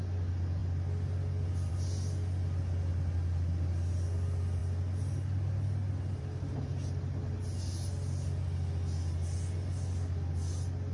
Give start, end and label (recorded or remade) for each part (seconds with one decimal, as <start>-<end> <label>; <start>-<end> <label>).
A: 0.0-10.9 recorded